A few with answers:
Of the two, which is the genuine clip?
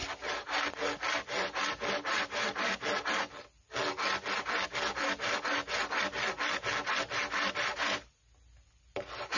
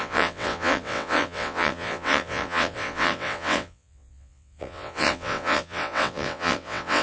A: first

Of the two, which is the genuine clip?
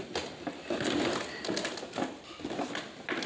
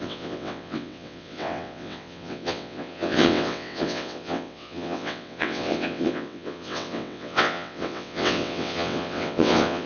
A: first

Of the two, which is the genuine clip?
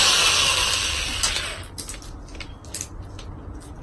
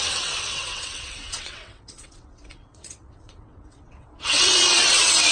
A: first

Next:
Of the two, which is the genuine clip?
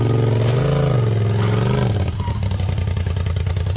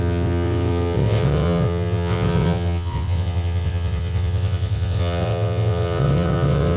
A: first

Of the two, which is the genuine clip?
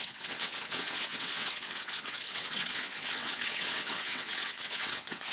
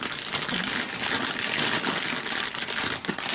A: second